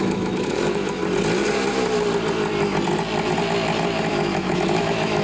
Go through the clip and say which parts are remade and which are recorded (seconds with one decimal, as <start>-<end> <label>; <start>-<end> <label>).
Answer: 0.0-1.0 remade; 1.0-4.1 recorded; 4.1-5.2 remade